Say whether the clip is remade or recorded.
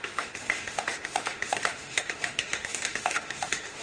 remade